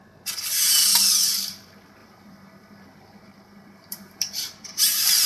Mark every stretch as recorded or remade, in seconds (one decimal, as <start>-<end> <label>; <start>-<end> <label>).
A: 0.0-2.0 recorded; 2.0-5.3 remade